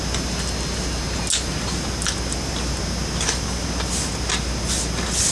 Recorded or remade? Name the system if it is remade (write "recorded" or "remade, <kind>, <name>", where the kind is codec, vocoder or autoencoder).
recorded